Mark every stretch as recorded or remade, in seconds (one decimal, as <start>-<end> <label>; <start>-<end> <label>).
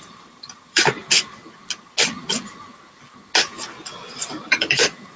0.0-1.0 remade; 1.0-4.1 recorded; 4.1-5.2 remade